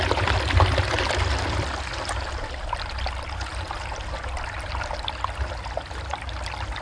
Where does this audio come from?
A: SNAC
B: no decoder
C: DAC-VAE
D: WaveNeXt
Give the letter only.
B